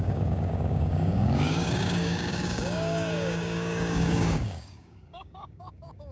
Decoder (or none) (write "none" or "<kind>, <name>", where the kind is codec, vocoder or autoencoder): codec, DAC